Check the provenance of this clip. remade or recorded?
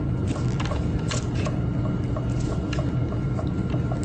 recorded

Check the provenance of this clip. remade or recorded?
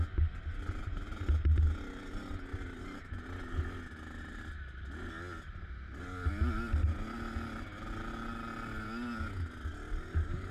recorded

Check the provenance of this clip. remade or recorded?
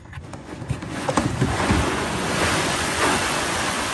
remade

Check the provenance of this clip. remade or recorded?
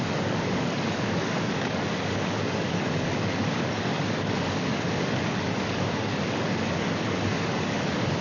remade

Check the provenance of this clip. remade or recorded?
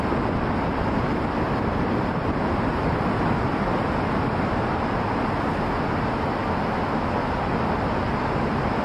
recorded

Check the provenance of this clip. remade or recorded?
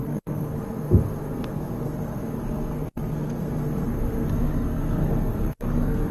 remade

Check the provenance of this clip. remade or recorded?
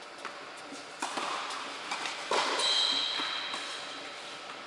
recorded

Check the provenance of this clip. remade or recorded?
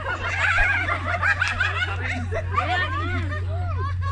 recorded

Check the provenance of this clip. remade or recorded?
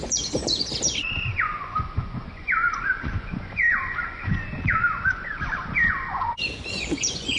remade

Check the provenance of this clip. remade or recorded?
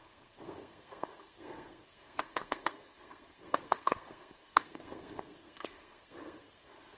remade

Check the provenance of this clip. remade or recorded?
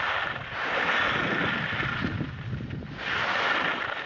recorded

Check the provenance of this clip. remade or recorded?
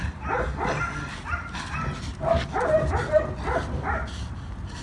recorded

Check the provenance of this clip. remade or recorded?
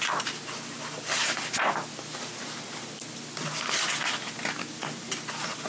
recorded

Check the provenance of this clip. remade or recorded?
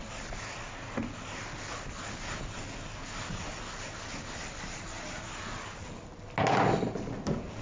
recorded